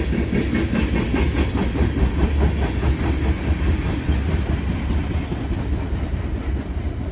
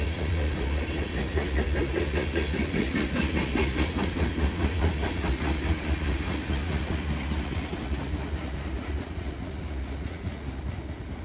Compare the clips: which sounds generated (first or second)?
second